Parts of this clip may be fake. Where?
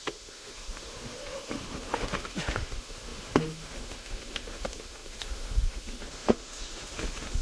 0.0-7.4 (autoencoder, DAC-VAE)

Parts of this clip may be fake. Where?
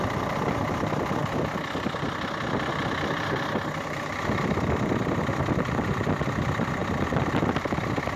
none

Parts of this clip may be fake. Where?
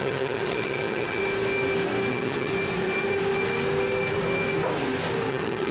0.0-1.2 (vocoder, HiFi-GAN); 2.1-2.5; 5.3-5.7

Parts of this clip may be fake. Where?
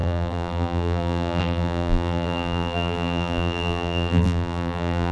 0.0-5.1 (vocoder, BigVGAN v2)